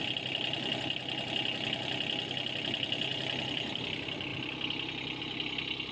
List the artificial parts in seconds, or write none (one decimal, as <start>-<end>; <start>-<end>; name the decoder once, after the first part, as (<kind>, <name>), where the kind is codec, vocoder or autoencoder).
none